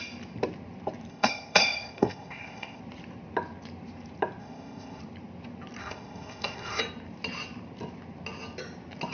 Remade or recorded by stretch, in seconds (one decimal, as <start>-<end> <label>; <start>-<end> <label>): 0.0-1.1 recorded; 1.1-2.8 remade; 2.8-4.4 recorded; 4.4-5.0 remade; 5.0-5.8 recorded; 5.8-6.8 remade; 6.8-9.1 recorded